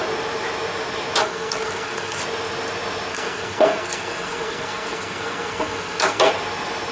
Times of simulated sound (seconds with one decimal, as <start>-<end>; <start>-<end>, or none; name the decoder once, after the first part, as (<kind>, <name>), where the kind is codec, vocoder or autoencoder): 1.2-2.2 (codec, SNAC); 3.1-6.3